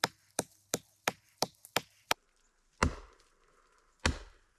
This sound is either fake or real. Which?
real